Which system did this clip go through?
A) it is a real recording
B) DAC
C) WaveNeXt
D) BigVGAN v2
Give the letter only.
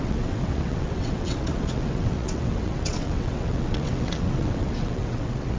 C